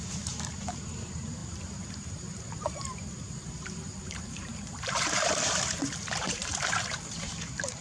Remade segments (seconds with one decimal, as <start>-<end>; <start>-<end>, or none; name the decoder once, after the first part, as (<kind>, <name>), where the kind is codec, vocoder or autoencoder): 0.0-7.8 (vocoder, BigVGAN v2)

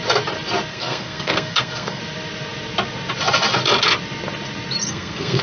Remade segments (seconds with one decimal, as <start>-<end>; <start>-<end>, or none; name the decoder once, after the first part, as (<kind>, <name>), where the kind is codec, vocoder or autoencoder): 0.7-2.0 (codec, SNAC); 4.8-5.4

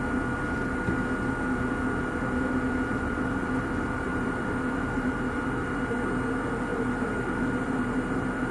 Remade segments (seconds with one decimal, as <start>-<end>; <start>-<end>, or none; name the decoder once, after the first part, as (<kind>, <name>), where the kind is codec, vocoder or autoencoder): 2.9-5.8 (vocoder, BigVGAN v2); 6.7-8.5

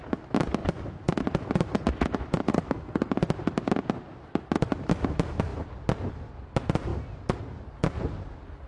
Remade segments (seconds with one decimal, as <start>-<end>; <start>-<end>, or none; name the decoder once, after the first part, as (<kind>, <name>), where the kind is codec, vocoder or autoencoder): 2.5-3.1 (codec, SNAC)

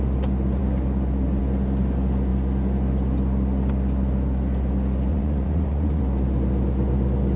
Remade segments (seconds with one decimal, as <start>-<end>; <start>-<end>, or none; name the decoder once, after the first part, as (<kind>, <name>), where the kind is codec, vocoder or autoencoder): 5.1-6.0 (vocoder, Vocos)

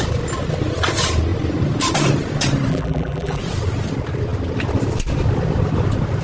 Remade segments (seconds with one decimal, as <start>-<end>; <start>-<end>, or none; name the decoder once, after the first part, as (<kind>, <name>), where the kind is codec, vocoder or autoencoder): 2.7-3.4 (vocoder, BigVGAN v2)

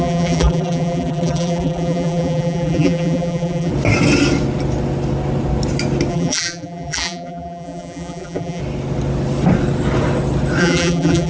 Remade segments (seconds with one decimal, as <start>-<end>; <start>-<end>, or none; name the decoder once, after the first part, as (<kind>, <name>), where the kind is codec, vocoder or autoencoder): 0.0-3.7 (vocoder, BigVGAN v2); 6.1-8.6; 10.6-11.3